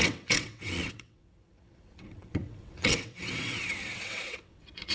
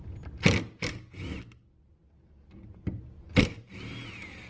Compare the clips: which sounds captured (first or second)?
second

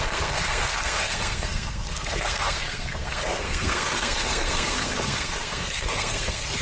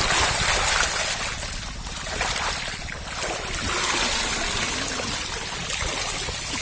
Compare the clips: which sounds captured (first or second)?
second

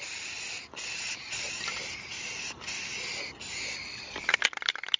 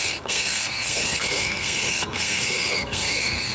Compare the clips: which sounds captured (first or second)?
first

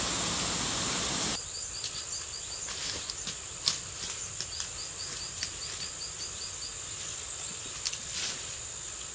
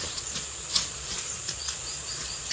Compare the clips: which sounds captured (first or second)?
first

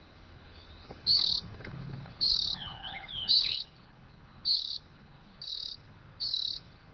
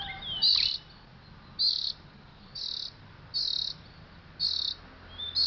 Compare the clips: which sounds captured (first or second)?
second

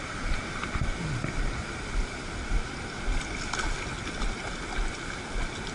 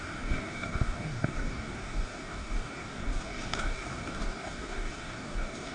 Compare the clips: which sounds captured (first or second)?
first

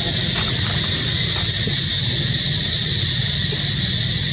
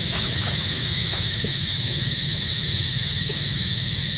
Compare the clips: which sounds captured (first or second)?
first